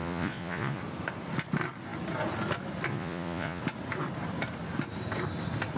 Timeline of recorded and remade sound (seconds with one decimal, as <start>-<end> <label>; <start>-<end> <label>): 0.0-0.8 remade; 0.8-2.9 recorded; 2.9-3.6 remade; 3.6-5.8 recorded

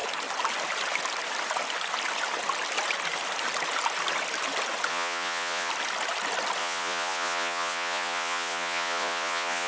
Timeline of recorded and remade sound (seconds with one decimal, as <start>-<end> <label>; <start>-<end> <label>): 0.0-4.9 recorded; 4.9-5.7 remade; 5.7-6.6 recorded; 6.6-9.7 remade